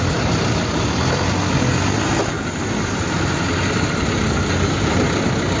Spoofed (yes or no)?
no